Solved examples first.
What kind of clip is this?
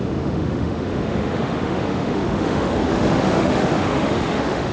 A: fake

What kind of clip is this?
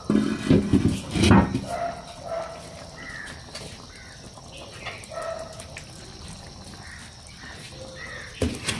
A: real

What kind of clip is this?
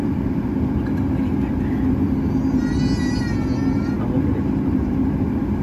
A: real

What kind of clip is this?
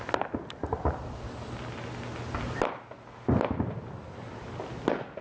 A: real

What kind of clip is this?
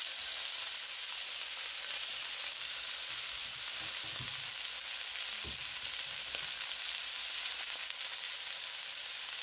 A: real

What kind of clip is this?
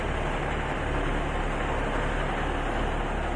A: real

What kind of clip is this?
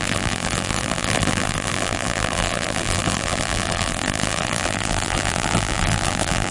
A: fake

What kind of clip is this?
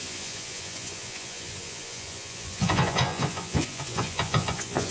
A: fake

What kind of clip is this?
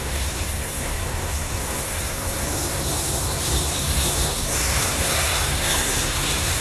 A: fake